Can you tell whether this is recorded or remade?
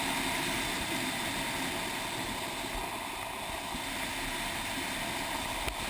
recorded